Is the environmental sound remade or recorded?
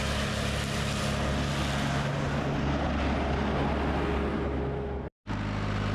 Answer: recorded